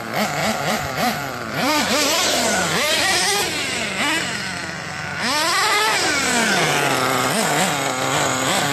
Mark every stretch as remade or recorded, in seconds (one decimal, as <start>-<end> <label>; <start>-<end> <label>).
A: 0.0-0.4 recorded; 0.4-1.8 remade; 1.8-8.7 recorded